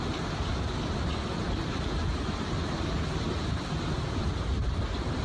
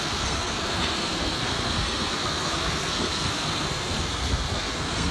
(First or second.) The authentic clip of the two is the first